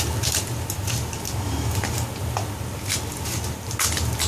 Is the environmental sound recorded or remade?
recorded